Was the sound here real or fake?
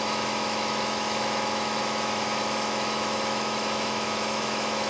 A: fake